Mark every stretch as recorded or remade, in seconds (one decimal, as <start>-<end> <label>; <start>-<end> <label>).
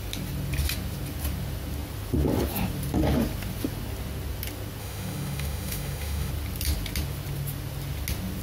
0.0-4.8 recorded; 4.8-6.3 remade; 6.3-8.4 recorded